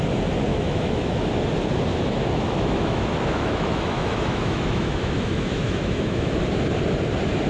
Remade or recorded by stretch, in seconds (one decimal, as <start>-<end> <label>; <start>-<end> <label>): 0.0-0.5 recorded; 0.5-1.3 remade; 1.3-1.9 recorded; 1.9-6.3 remade; 6.3-7.5 recorded